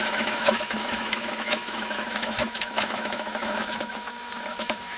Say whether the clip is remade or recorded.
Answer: remade